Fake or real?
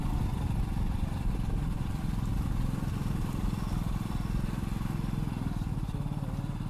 real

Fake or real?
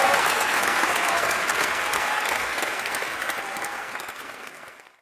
fake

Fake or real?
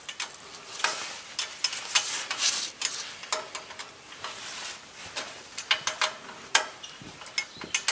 real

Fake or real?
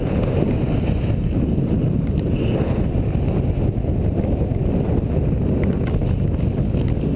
real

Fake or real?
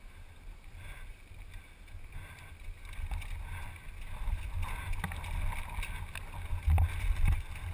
real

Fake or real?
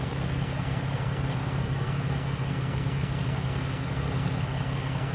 fake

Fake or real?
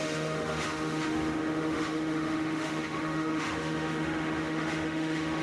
fake